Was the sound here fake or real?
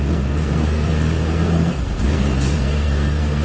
fake